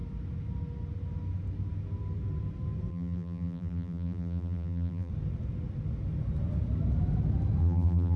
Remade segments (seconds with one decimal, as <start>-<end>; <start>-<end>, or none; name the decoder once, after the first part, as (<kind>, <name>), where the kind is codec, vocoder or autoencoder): 2.9-5.1 (vocoder, BigVGAN v2); 7.6-8.2